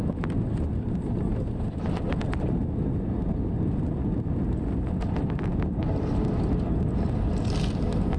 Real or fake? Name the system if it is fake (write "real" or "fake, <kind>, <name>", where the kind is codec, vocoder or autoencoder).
real